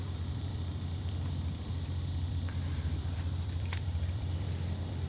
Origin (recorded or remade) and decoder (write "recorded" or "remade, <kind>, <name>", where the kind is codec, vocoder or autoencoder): remade, vocoder, BigVGAN v2